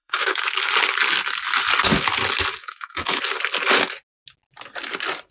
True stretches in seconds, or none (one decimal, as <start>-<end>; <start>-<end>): 0.7-2.6; 3.2-5.3